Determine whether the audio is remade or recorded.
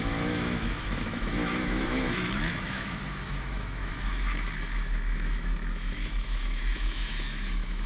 remade